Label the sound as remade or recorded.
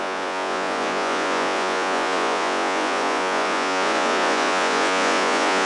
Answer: remade